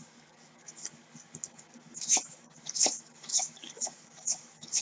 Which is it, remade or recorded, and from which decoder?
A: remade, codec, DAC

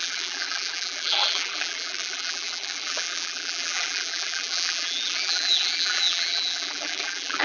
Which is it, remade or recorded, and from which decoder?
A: remade, vocoder, BigVGAN v2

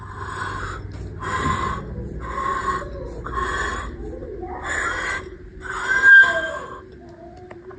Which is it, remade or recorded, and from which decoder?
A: recorded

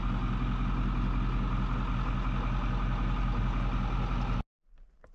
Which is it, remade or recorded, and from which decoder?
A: recorded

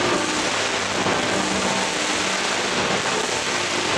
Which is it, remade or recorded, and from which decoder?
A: recorded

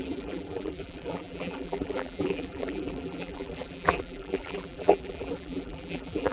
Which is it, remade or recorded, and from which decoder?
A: remade, vocoder, BigVGAN v2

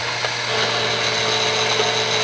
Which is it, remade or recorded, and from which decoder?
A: recorded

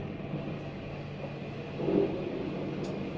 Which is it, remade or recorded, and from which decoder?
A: recorded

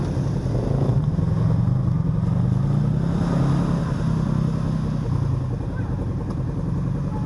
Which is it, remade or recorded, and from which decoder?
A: recorded